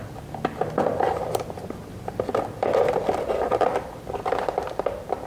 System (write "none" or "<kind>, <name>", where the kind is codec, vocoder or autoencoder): vocoder, BigVGAN v2